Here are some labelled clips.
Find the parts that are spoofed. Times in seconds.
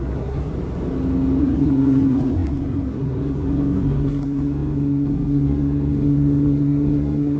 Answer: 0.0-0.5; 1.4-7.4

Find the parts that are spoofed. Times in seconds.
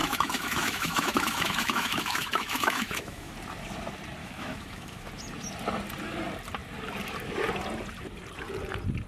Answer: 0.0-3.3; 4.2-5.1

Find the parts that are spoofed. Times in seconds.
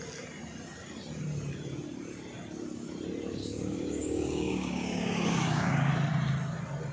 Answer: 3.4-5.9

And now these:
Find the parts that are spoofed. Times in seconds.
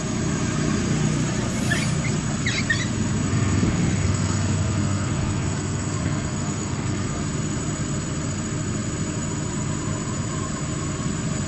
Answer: 3.3-7.2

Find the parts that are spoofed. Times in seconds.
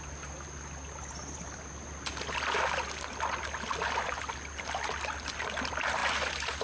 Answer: none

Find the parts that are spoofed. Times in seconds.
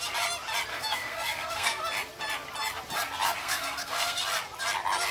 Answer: 0.7-1.8; 3.4-4.2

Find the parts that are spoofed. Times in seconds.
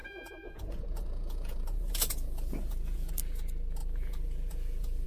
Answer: 0.0-3.1; 3.8-5.1